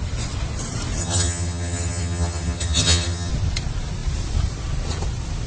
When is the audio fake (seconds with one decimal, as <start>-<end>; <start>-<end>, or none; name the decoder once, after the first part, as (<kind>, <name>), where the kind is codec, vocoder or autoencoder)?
1.0-3.3 (vocoder, HiFi-GAN)